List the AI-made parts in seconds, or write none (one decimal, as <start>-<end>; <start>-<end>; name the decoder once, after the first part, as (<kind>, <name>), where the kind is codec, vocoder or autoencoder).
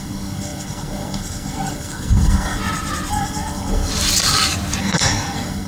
0.0-2.6 (codec, SNAC); 3.1-3.9; 4.8-5.7